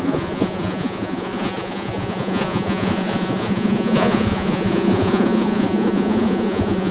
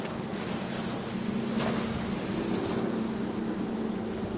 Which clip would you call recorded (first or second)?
second